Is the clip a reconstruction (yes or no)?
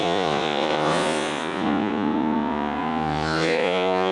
yes